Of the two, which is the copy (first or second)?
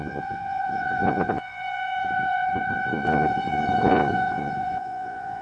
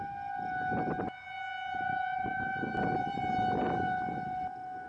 first